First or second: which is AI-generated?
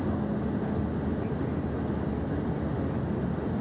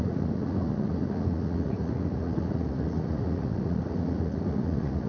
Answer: second